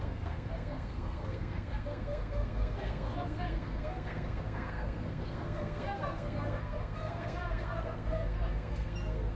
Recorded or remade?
remade